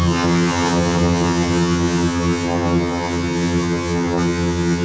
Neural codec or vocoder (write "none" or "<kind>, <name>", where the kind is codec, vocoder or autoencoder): vocoder, HiFi-GAN